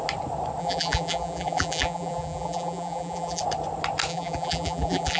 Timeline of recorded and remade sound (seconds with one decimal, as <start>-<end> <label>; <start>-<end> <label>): 0.0-0.6 recorded; 0.6-3.4 remade; 3.4-4.1 recorded; 4.1-5.2 remade